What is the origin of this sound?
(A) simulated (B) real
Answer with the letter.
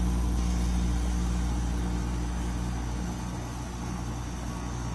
B